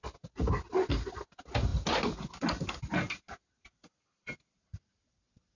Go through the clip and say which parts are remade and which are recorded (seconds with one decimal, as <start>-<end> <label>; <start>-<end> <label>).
0.0-5.6 recorded